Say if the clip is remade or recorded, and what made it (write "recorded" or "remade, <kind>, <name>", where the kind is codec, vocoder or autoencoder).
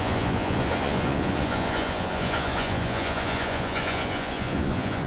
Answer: remade, vocoder, Vocos